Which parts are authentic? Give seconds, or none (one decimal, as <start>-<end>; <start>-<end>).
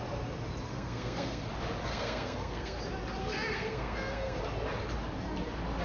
0.0-0.7; 1.5-1.9; 2.8-3.2; 4.4-5.8